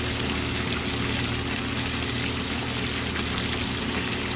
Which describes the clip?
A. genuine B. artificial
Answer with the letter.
A